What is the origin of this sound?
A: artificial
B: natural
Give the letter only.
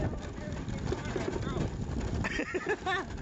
B